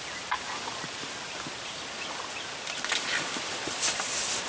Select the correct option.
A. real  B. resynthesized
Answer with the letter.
A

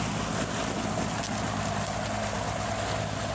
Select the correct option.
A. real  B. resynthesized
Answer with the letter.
A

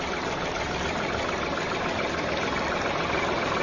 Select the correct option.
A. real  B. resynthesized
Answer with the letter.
A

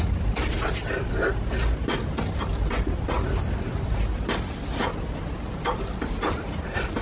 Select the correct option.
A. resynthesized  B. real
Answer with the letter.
B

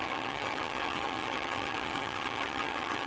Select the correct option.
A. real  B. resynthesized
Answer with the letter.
B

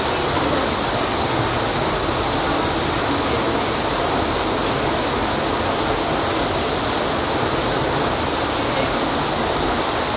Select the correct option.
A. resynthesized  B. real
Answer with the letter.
B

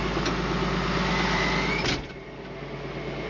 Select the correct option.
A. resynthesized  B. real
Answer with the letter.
B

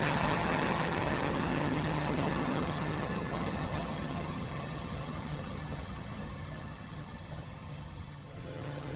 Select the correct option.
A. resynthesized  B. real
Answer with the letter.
A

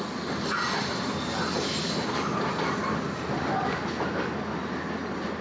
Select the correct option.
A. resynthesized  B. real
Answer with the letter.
B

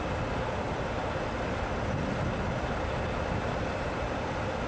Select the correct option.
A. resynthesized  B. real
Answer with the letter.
B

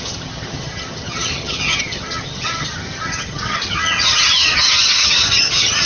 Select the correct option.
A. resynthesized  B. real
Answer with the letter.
A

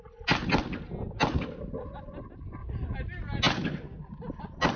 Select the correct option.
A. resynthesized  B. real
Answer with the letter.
B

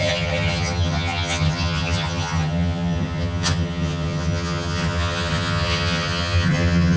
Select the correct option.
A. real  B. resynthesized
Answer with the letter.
B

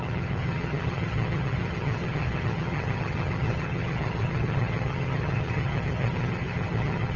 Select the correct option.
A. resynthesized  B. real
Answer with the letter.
A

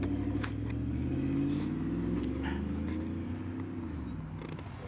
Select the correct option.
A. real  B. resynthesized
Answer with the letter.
A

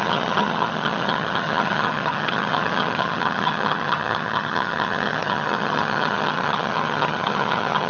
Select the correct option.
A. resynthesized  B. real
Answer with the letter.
A